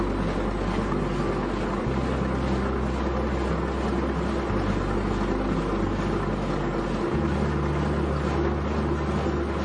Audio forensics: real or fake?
real